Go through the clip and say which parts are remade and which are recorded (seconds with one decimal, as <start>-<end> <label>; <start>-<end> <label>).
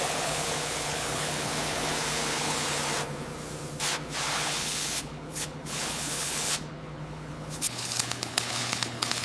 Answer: 0.0-2.8 remade; 2.8-4.2 recorded; 4.2-9.2 remade